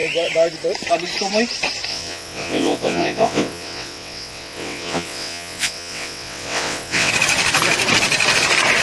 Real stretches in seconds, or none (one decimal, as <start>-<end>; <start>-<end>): 0.0-1.9; 7.1-8.8